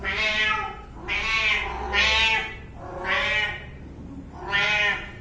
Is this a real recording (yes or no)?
yes